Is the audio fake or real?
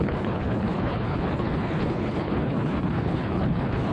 fake